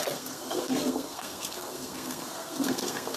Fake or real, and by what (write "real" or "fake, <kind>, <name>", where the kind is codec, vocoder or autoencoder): fake, codec, SNAC